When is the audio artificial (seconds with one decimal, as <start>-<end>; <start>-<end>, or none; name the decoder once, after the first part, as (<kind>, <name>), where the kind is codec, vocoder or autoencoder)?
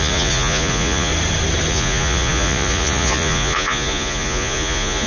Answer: 0.0-1.1 (vocoder, Vocos); 1.7-5.1